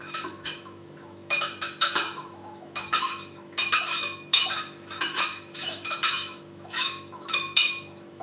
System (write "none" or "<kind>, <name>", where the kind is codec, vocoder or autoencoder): autoencoder, DAC-VAE